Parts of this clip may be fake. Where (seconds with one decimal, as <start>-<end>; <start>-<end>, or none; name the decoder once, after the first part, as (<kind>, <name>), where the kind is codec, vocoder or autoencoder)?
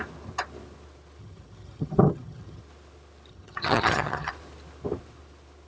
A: 1.2-2.6 (vocoder, HiFi-GAN); 3.3-4.3